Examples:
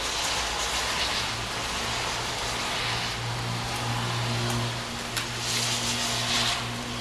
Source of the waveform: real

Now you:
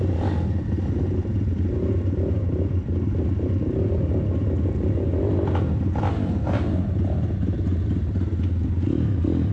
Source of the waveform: real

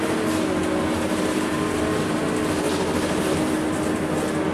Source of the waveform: real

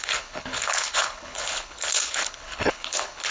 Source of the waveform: fake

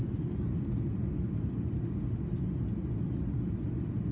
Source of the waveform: real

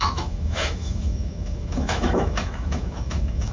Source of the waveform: fake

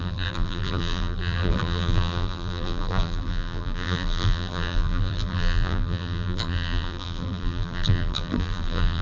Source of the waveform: fake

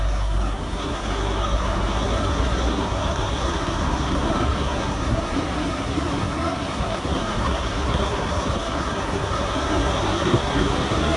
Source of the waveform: fake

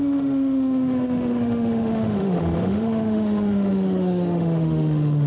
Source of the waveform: fake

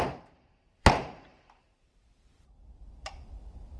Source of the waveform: fake